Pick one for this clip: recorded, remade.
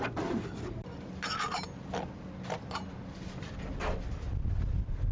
recorded